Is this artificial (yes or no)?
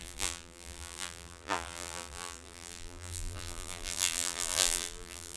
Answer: yes